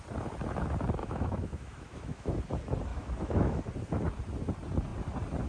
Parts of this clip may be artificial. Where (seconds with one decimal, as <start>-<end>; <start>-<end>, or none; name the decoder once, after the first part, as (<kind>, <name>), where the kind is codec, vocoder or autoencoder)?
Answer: 1.0-2.3 (autoencoder, DAC-VAE); 2.9-3.6

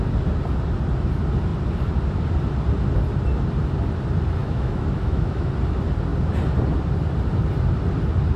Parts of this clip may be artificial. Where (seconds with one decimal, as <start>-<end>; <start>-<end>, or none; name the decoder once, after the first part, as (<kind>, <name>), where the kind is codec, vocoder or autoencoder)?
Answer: 4.4-5.5 (autoencoder, DAC-VAE)

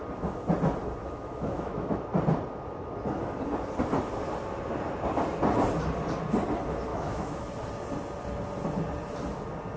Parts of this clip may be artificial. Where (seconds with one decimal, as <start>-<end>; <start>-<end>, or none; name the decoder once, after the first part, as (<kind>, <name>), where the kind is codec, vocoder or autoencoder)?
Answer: 1.0-2.0 (autoencoder, DAC-VAE); 6.9-7.5

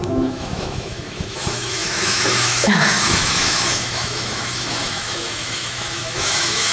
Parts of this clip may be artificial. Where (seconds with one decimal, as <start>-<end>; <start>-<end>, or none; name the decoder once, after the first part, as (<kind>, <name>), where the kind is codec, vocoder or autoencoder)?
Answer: 0.0-6.7 (autoencoder, DAC-VAE)

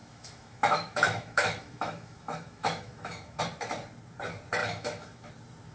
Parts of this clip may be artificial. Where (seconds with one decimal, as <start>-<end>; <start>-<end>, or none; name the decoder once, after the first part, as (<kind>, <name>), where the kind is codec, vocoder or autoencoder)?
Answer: 0.0-3.4 (autoencoder, DAC-VAE); 4.6-5.3

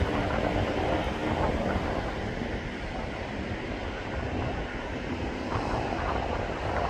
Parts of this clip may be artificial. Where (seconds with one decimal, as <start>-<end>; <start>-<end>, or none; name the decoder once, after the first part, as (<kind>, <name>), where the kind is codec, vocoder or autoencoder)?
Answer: none

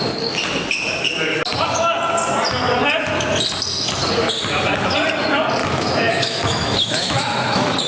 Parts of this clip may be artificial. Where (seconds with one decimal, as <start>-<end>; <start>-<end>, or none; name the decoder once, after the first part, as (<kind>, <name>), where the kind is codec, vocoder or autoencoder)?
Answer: 5.6-7.9 (autoencoder, DAC-VAE)

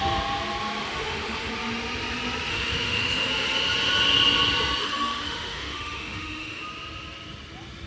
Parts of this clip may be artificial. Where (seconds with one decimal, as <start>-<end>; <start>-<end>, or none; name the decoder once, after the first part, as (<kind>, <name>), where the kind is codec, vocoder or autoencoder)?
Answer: 0.8-1.5 (autoencoder, DAC-VAE); 2.5-3.3; 4.8-6.6